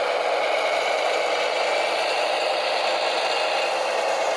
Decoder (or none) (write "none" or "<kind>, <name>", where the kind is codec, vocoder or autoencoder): none